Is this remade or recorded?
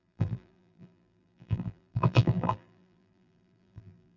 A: remade